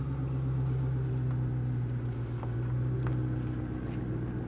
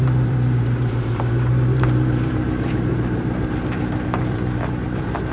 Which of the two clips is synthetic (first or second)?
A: second